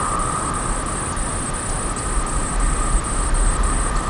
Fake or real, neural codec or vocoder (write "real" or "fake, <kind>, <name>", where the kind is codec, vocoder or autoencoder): real